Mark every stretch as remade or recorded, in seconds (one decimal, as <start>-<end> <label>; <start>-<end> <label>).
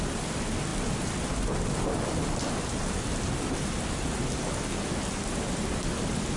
0.0-6.4 recorded